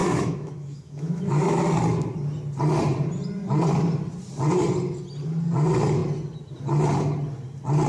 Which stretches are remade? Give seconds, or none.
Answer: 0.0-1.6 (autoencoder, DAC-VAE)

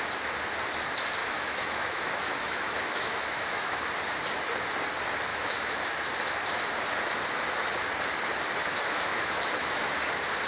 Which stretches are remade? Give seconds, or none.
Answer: 1.2-3.9 (autoencoder, DAC-VAE); 5.3-5.8; 8.6-9.8

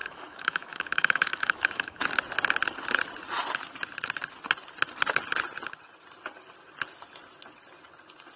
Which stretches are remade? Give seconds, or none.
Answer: 0.0-2.1 (autoencoder, DAC-VAE)

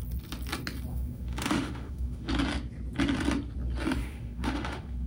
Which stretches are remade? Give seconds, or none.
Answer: 0.9-2.3 (autoencoder, DAC-VAE); 4.0-5.1